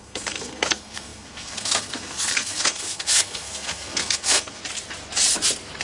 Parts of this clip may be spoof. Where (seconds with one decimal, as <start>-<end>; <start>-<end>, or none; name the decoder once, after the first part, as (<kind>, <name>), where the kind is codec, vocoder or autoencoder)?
0.0-4.6 (codec, SNAC)